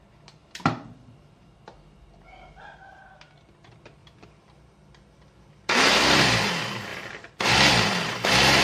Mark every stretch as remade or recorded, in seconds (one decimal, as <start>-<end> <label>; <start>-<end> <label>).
0.0-0.4 recorded; 0.4-3.3 remade; 3.3-4.0 recorded; 4.0-6.5 remade; 6.5-6.9 recorded; 6.9-7.7 remade; 7.7-8.6 recorded